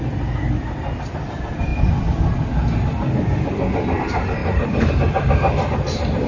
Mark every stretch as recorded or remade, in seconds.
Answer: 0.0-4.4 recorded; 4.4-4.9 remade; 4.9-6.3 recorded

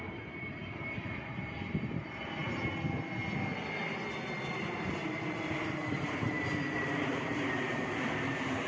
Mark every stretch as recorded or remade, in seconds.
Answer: 0.0-2.4 remade; 2.4-4.5 recorded; 4.5-8.7 remade

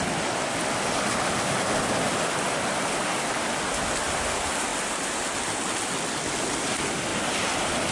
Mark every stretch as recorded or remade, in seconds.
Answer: 0.0-7.9 recorded